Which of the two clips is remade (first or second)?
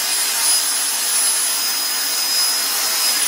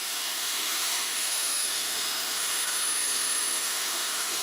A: second